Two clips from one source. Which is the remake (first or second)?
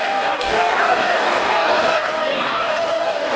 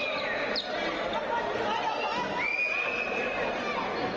first